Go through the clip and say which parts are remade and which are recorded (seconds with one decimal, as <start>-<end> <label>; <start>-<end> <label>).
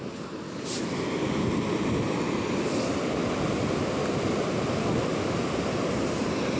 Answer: 0.0-6.6 recorded